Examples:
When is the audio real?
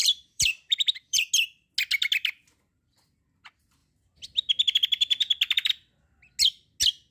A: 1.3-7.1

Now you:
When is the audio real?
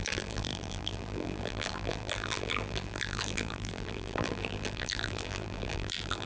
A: none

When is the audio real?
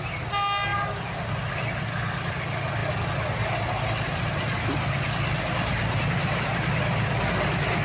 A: 0.0-7.8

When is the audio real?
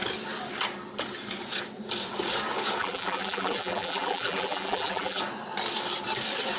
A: 0.0-2.8; 5.2-6.6